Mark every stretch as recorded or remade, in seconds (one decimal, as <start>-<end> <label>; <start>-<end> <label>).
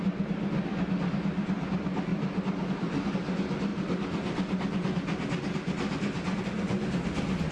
0.0-7.5 recorded